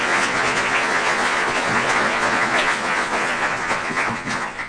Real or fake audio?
fake